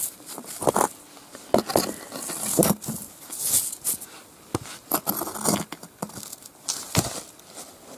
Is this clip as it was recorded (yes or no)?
yes